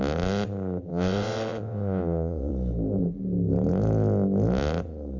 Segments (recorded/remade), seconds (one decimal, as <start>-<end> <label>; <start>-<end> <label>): 0.0-0.9 recorded; 0.9-2.5 remade; 2.5-5.2 recorded